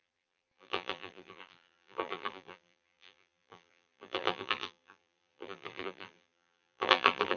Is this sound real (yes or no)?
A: no